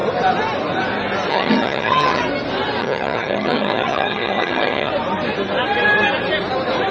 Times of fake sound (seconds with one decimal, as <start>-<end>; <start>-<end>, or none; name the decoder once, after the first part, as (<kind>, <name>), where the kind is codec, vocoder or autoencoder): 1.3-2.2 (vocoder, HiFi-GAN); 2.8-4.9